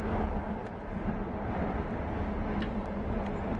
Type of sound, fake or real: fake